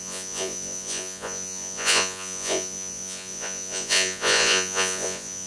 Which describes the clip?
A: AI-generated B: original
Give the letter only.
A